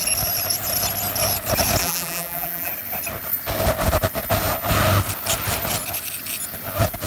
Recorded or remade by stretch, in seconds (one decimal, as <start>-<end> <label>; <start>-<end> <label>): 0.0-1.8 recorded; 1.8-2.7 remade; 2.7-7.1 recorded